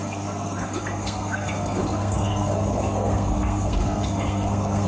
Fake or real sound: fake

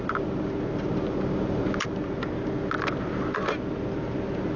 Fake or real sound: real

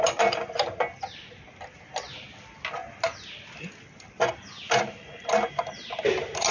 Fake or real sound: real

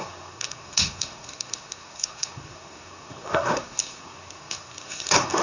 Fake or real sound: fake